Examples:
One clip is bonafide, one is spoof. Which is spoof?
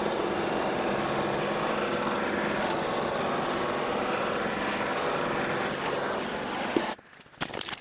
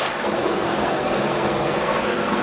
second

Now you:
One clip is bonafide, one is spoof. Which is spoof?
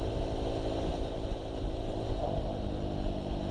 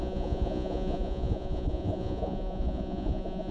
second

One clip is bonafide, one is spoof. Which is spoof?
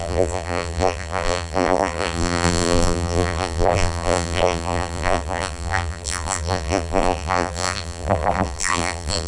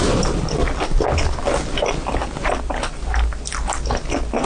first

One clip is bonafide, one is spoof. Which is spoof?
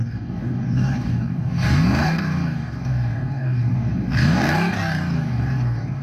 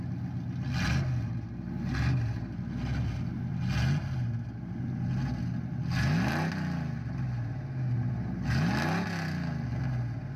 first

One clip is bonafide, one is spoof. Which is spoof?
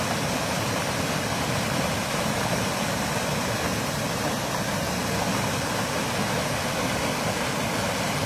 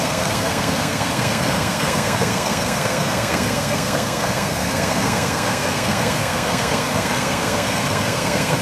second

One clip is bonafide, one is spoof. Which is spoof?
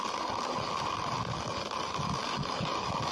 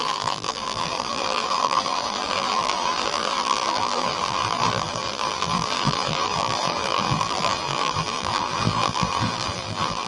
second